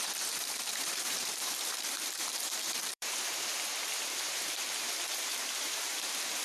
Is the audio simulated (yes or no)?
yes